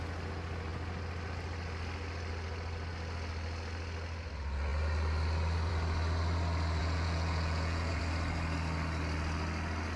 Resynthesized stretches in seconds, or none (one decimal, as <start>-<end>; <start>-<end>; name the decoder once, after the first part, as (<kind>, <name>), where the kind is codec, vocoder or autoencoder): 6.8-8.0 (vocoder, Vocos)